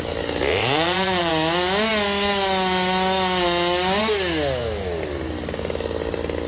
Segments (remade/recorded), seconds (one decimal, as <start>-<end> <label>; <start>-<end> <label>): 0.0-0.6 recorded; 0.6-1.3 remade; 1.3-6.5 recorded